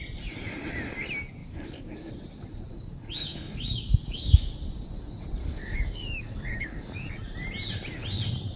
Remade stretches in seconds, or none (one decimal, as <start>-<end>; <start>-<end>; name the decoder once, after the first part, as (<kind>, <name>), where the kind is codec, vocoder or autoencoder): 1.4-2.1 (codec, DAC); 2.7-4.5; 5.4-7.1